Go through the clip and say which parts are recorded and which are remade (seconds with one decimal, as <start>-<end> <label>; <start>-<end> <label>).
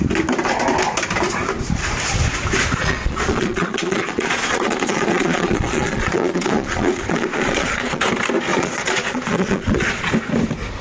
0.0-2.8 recorded; 2.8-8.0 remade; 8.0-8.5 recorded; 8.5-10.1 remade; 10.1-10.8 recorded